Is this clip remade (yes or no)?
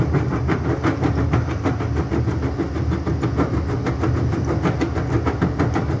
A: no